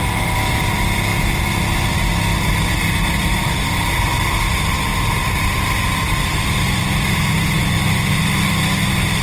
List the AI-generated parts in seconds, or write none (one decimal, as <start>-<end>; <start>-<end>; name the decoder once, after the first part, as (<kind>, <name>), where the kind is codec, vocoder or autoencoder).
none

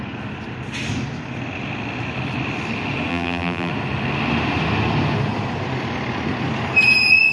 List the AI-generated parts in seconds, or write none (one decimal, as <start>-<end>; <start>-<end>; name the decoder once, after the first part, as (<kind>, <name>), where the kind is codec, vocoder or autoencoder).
3.1-3.7 (vocoder, BigVGAN v2)

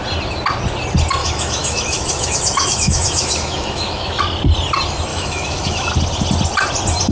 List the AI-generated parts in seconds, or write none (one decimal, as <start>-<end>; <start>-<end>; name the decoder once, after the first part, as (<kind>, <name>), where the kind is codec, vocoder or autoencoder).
1.2-4.2 (autoencoder, DAC-VAE); 5.1-5.9

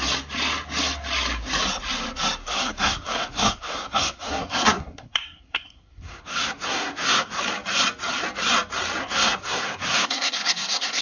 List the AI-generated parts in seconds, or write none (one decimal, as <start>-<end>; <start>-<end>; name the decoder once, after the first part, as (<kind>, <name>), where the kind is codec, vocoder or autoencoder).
2.4-7.4 (codec, SNAC); 9.0-11.0

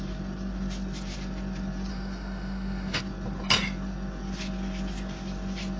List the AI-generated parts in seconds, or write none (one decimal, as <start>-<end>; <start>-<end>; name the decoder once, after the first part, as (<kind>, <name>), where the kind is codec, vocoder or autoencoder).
1.9-3.0 (autoencoder, DAC-VAE)

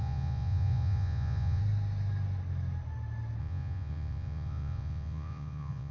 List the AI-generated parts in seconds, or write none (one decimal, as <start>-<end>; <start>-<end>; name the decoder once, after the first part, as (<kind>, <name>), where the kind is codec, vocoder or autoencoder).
0.0-1.6 (vocoder, Vocos); 3.4-5.9

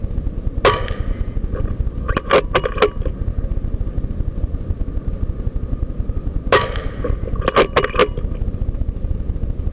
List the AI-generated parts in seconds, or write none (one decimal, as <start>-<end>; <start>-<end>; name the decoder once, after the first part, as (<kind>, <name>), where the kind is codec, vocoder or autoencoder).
none

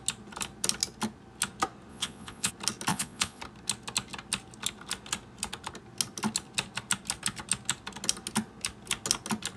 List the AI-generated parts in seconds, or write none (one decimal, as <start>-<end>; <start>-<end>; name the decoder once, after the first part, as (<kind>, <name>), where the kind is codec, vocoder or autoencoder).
1.9-2.5 (vocoder, Vocos); 2.9-3.4